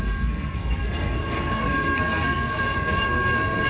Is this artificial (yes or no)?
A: yes